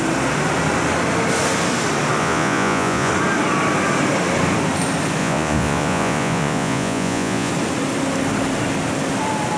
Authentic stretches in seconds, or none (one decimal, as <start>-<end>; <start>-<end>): 0.0-2.2; 3.1-5.2; 7.5-9.6